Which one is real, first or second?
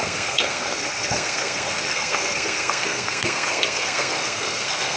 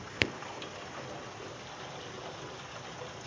second